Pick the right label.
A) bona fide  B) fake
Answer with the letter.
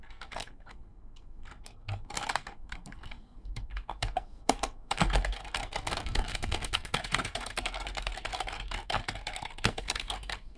B